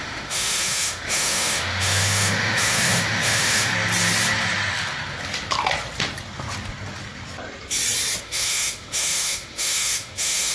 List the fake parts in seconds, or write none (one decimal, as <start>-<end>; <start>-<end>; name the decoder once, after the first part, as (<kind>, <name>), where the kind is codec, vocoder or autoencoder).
0.0-3.7 (autoencoder, DAC-VAE); 8.2-10.5

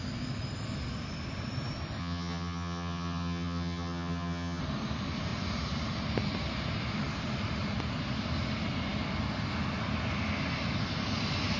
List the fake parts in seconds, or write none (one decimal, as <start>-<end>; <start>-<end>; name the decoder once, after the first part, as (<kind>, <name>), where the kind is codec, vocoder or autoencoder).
2.0-4.6 (vocoder, HiFi-GAN)

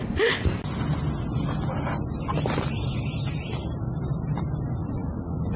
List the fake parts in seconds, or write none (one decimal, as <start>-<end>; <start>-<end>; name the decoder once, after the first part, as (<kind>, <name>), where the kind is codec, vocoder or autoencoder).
4.8-5.6 (vocoder, Vocos)

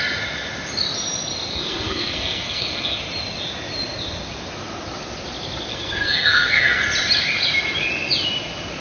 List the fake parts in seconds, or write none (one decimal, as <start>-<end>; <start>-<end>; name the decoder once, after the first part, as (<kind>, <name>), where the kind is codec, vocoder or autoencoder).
1.5-3.0 (codec, SNAC); 5.7-6.8